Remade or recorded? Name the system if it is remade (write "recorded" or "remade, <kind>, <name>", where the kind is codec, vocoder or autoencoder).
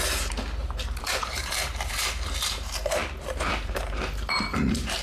remade, vocoder, BigVGAN v2